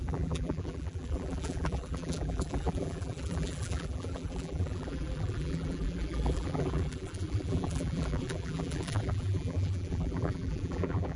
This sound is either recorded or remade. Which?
remade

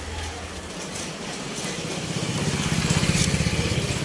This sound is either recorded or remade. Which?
recorded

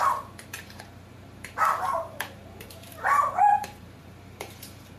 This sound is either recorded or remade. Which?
remade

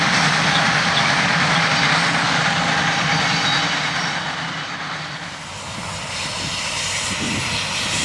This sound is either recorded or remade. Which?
recorded